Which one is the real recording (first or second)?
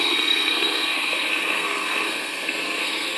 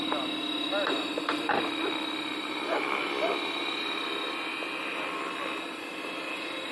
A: second